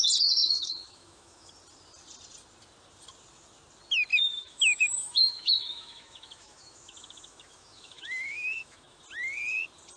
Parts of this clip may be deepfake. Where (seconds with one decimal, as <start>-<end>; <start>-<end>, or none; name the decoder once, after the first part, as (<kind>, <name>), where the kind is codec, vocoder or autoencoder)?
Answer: 0.4-1.5 (autoencoder, DAC-VAE); 4.1-9.0

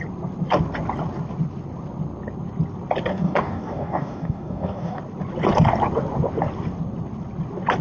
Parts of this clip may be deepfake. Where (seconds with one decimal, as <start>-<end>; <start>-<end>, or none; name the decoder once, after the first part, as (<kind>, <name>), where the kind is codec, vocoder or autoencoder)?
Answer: 3.1-5.0 (codec, DAC)